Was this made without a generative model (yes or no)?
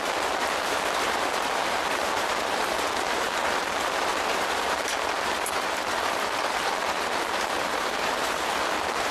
no